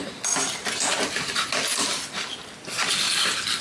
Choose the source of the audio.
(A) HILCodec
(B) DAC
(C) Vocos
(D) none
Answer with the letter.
D